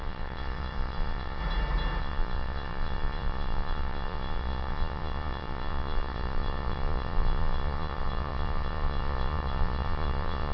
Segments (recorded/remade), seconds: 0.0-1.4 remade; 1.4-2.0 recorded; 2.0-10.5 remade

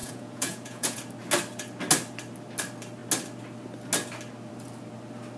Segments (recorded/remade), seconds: 0.0-1.0 remade; 1.0-5.4 recorded

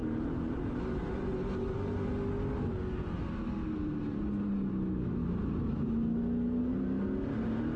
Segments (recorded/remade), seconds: 0.0-7.8 recorded